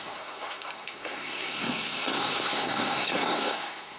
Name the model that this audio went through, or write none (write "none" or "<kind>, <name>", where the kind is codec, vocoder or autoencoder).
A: codec, SNAC